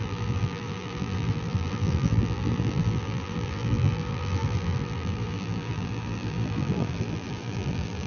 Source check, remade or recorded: remade